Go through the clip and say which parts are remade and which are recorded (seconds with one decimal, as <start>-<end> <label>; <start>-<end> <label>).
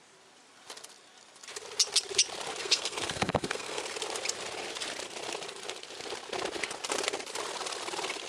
0.0-2.6 recorded; 2.6-3.8 remade; 3.8-8.3 recorded